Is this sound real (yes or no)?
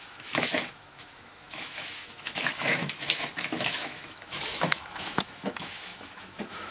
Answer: no